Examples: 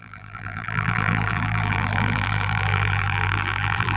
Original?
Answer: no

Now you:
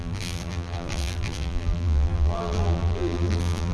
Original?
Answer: no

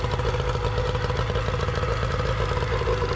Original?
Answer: yes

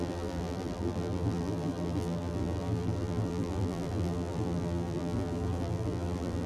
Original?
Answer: no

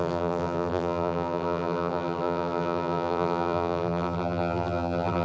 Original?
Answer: no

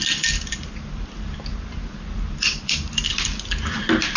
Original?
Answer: no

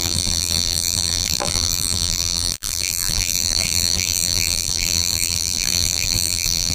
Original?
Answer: no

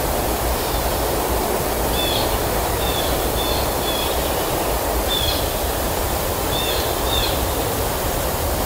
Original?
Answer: no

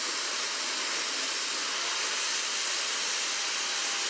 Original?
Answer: yes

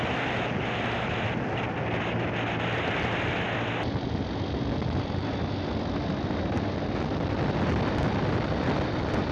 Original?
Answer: yes